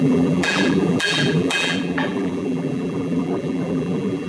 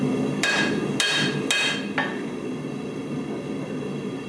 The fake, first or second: first